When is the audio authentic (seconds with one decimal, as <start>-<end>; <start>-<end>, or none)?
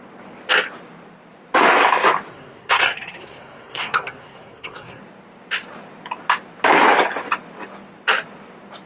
0.0-2.3; 5.0-8.9